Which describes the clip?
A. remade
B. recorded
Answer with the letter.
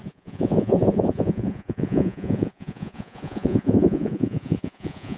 A